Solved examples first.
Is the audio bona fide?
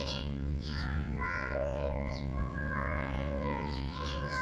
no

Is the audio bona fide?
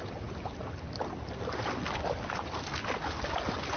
yes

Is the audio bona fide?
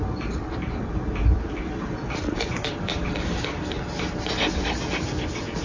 yes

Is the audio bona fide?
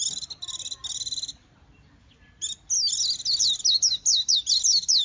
yes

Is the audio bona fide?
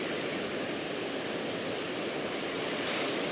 yes